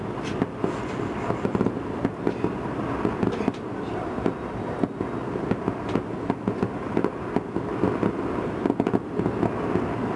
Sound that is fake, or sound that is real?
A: real